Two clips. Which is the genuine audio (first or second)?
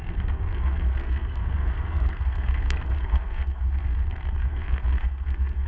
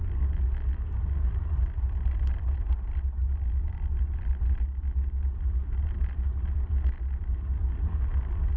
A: second